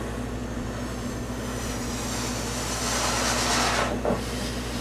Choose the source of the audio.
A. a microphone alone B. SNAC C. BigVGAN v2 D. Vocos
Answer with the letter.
A